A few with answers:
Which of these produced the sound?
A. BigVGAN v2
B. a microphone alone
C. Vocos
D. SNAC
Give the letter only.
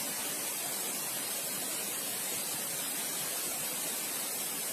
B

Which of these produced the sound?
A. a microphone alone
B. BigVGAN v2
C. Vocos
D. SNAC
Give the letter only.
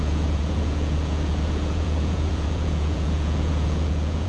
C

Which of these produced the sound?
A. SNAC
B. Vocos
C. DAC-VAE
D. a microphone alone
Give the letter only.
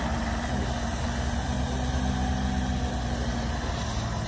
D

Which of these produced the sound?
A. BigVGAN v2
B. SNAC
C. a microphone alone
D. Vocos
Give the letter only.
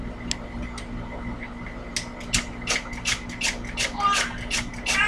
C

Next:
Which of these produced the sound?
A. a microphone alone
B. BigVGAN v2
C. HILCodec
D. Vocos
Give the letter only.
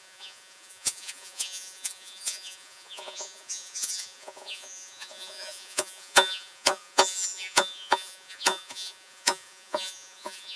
D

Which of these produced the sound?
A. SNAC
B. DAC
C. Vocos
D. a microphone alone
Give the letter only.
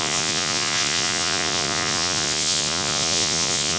C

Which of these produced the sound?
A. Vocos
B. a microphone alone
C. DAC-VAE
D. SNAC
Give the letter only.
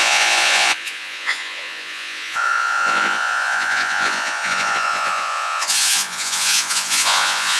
A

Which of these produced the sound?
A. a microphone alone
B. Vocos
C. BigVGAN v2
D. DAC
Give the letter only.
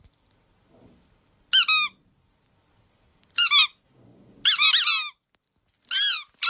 A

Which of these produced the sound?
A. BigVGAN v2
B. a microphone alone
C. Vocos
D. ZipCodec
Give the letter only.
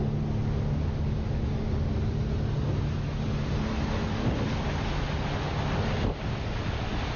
B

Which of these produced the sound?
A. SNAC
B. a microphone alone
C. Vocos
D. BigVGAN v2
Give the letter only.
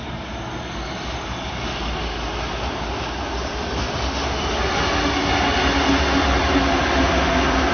B